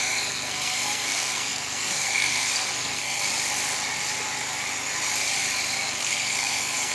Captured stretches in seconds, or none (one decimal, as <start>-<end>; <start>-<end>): 3.2-6.0